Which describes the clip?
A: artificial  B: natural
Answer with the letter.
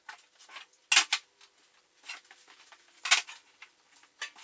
B